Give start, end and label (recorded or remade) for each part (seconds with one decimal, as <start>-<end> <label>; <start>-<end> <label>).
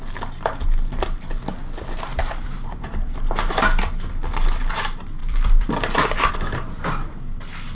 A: 0.0-2.1 recorded; 2.1-2.8 remade; 2.8-5.2 recorded; 5.2-6.3 remade; 6.3-7.7 recorded